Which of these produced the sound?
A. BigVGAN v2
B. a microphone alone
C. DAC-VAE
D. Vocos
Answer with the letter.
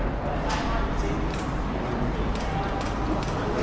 B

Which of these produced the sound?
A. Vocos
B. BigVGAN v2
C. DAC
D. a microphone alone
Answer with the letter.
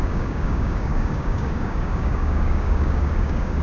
C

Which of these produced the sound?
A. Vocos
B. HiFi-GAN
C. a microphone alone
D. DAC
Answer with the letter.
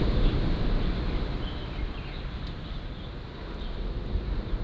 C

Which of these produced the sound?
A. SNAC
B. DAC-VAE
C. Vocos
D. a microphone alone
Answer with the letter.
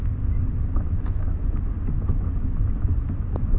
D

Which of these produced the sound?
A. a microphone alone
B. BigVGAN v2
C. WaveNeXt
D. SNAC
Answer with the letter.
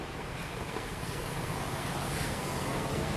D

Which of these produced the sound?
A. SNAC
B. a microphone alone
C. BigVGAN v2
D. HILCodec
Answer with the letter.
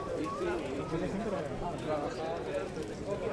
C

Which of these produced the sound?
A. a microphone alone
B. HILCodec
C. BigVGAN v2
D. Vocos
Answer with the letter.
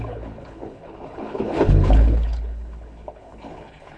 B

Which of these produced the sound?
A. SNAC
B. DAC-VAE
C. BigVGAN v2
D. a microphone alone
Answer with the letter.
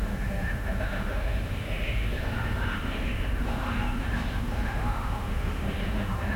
B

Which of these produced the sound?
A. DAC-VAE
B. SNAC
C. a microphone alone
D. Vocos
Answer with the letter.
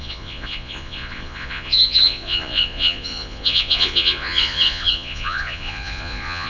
D